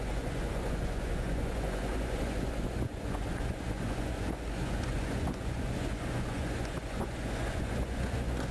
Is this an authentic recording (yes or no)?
no